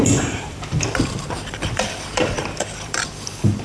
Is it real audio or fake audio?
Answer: fake